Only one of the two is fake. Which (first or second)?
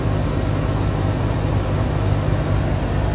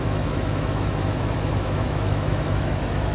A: second